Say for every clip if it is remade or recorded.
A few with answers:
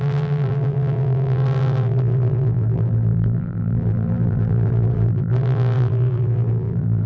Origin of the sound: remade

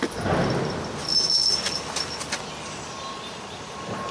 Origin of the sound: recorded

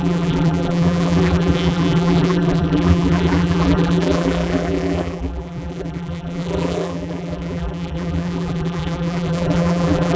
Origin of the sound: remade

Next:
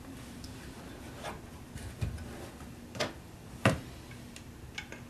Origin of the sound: recorded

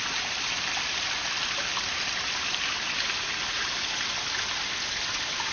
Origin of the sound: recorded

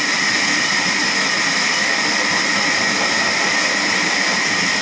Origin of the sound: recorded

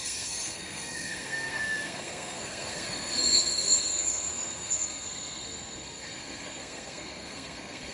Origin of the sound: remade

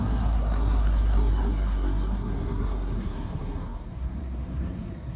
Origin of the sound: remade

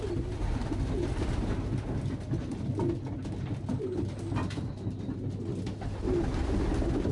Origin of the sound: recorded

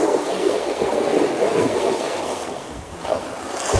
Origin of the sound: remade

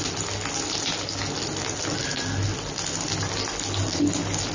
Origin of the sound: recorded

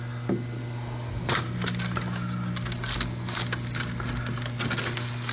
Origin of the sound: recorded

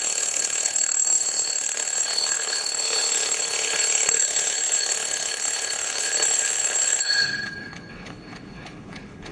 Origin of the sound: remade